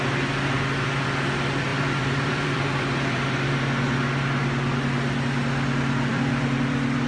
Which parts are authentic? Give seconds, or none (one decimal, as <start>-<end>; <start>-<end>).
0.0-1.7; 3.6-6.1